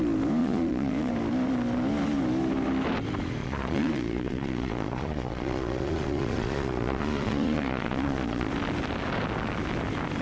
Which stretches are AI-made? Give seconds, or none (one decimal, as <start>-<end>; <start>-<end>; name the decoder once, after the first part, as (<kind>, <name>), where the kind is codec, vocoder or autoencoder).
0.4-1.1 (vocoder, Vocos); 3.4-8.5